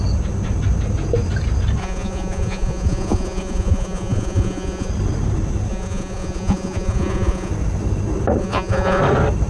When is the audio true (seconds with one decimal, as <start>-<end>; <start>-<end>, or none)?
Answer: 0.0-1.8; 4.9-5.7; 7.5-8.4; 9.0-9.5